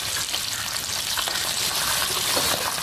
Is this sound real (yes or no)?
yes